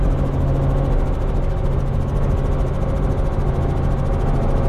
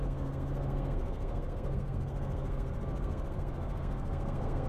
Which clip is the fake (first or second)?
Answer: second